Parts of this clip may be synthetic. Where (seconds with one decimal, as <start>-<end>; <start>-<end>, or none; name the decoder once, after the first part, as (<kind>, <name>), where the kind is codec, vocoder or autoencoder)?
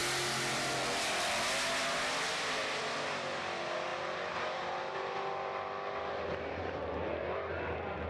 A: none